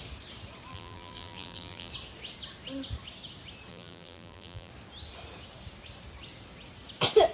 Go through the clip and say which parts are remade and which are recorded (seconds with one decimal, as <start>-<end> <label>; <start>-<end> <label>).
0.0-0.7 recorded; 0.7-1.9 remade; 1.9-3.7 recorded; 3.7-4.7 remade; 4.7-7.3 recorded